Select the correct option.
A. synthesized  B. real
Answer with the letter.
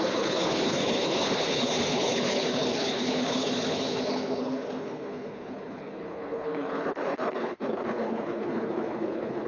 A